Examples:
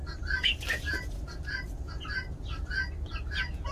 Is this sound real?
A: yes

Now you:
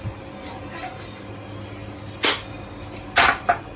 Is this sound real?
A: yes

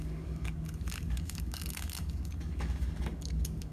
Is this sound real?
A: no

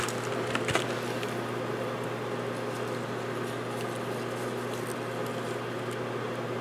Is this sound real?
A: yes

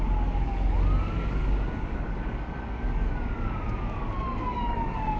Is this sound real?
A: no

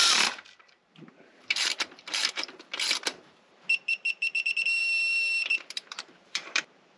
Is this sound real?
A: no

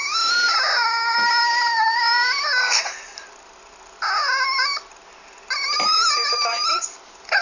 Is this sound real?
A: yes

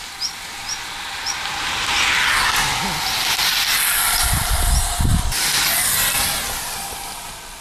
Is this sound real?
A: yes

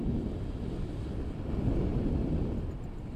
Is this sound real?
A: yes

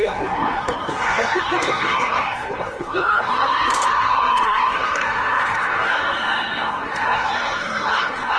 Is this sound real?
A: no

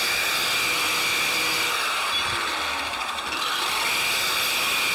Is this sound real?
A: yes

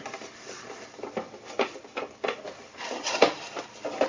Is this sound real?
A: yes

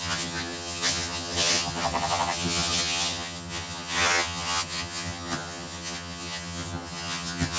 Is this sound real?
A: no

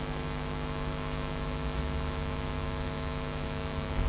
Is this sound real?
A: no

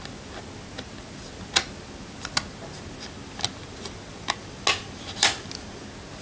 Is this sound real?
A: yes